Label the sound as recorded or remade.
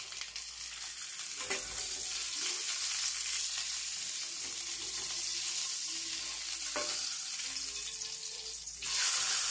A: recorded